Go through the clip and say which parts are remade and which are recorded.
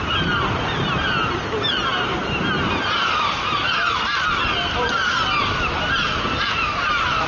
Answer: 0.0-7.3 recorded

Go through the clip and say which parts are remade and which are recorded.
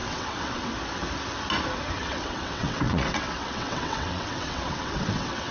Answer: 0.0-0.7 remade; 0.7-2.0 recorded; 2.0-5.5 remade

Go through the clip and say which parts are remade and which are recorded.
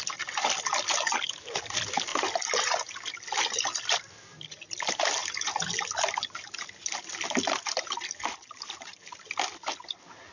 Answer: 0.0-10.3 recorded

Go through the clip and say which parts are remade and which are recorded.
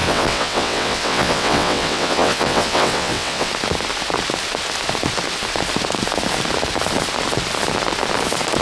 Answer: 0.0-3.5 remade; 3.5-8.6 recorded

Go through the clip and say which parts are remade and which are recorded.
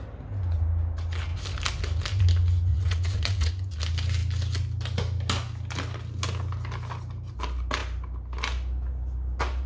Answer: 0.0-2.7 recorded; 2.7-3.5 remade; 3.5-9.7 recorded